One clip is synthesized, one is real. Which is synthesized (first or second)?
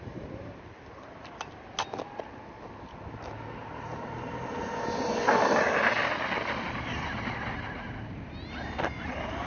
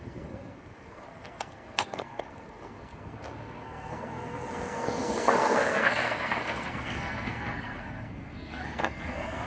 second